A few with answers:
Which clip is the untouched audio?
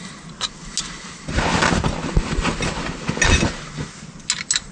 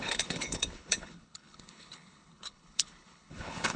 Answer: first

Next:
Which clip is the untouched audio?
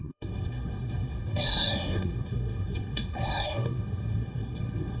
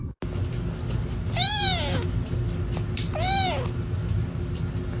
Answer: second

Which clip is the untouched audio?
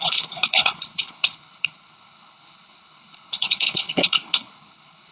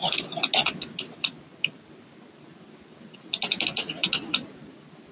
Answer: second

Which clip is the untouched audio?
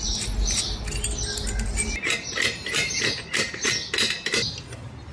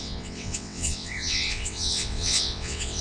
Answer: first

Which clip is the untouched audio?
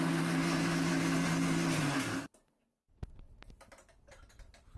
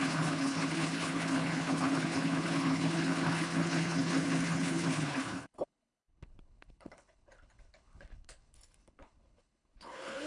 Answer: first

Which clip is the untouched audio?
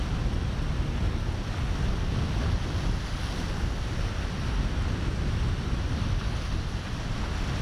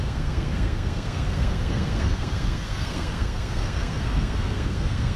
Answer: first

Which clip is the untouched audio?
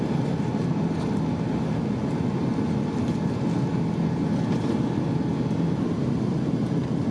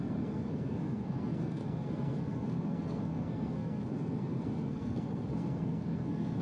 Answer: first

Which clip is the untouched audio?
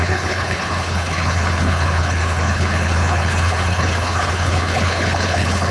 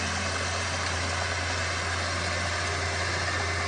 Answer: second